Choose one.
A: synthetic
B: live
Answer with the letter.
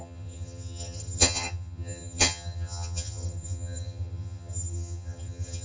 A